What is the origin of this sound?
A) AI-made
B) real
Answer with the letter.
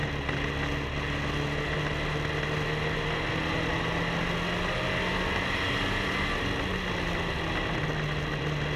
B